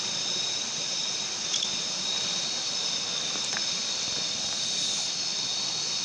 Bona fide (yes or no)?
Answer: yes